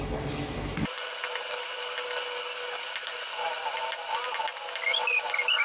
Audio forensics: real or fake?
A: real